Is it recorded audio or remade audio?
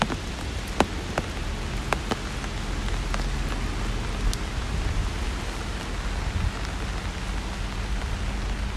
recorded